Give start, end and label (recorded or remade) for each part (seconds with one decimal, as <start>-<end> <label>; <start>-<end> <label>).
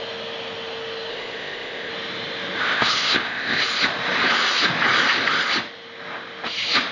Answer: 0.0-1.1 recorded; 1.1-1.9 remade; 1.9-2.6 recorded; 2.6-3.6 remade; 3.6-6.9 recorded